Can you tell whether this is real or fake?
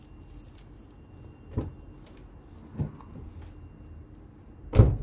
real